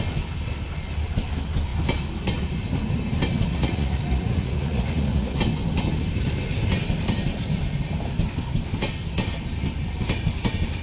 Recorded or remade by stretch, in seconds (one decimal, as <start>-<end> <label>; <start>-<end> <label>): 0.0-3.5 recorded; 3.5-5.4 remade; 5.4-10.8 recorded